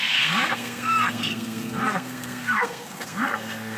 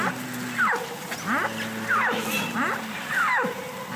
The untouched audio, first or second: second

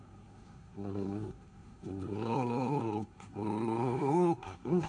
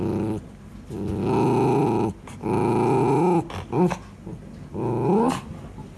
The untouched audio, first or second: second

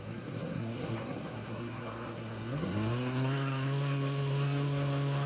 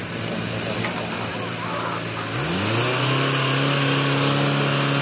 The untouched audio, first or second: second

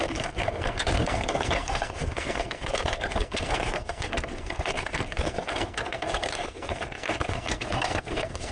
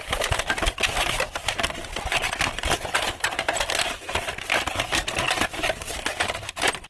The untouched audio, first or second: second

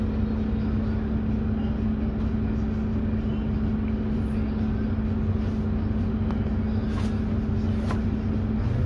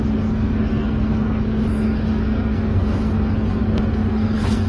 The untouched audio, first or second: first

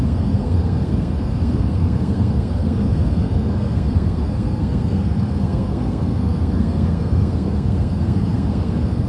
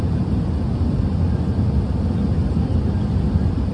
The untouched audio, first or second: second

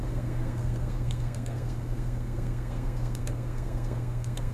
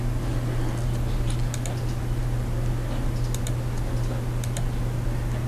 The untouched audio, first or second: second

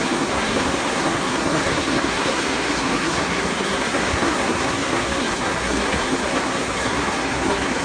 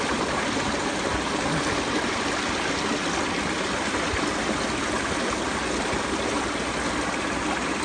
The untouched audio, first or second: second